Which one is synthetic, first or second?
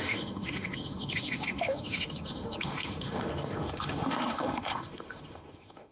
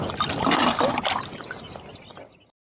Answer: first